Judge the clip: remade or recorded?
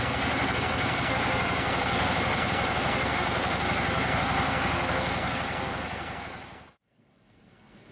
remade